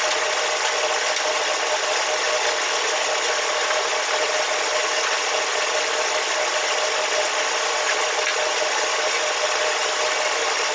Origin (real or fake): real